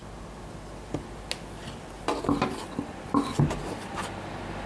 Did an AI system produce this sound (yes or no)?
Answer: no